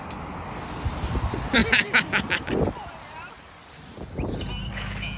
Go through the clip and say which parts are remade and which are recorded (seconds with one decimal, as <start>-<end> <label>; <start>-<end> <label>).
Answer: 0.0-5.2 recorded